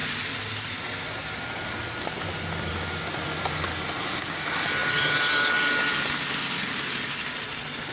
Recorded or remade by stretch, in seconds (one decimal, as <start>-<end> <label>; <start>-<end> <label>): 0.0-1.8 recorded; 1.8-2.7 remade; 2.7-7.9 recorded

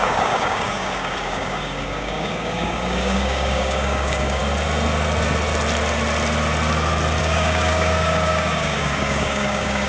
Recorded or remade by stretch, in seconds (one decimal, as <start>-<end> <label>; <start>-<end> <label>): 0.0-4.4 remade; 4.4-7.2 recorded; 7.2-9.9 remade

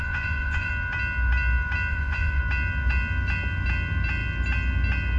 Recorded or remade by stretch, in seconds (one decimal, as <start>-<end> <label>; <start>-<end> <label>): 0.0-0.7 remade; 0.7-1.9 recorded; 1.9-2.4 remade; 2.4-5.2 recorded

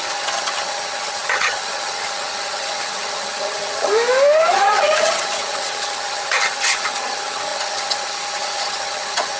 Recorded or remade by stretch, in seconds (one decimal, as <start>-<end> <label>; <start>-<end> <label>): 0.0-3.9 remade; 3.9-4.5 recorded; 4.5-9.4 remade

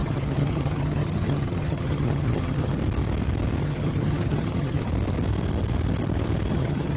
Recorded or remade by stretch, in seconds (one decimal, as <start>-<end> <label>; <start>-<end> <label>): 0.0-2.8 remade; 2.8-3.6 recorded; 3.6-4.9 remade; 4.9-6.5 recorded; 6.5-7.0 remade

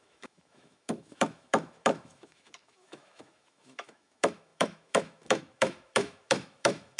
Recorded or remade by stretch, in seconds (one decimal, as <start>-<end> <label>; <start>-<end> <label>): 0.0-7.0 remade

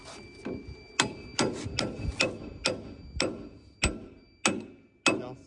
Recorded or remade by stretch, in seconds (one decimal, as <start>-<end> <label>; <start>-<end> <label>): 0.0-5.5 recorded

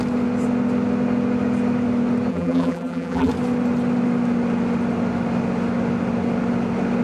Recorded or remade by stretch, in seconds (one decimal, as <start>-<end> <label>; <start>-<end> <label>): 0.0-2.3 recorded; 2.3-3.3 remade; 3.3-7.0 recorded